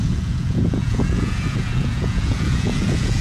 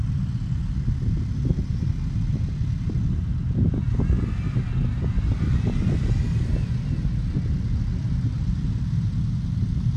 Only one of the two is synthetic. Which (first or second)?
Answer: first